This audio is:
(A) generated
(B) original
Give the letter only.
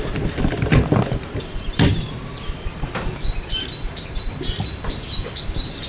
A